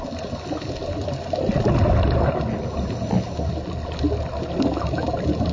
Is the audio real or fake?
real